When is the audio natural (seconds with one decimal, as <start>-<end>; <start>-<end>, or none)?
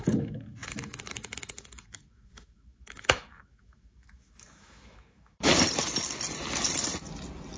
5.5-7.6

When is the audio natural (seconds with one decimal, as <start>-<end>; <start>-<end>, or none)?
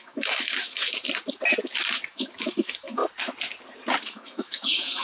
0.9-2.1; 3.0-4.0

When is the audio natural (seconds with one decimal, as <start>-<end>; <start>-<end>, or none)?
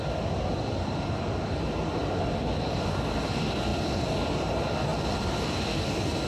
0.0-6.3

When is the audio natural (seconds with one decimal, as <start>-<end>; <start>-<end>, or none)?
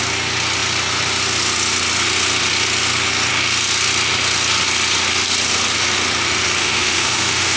0.0-6.6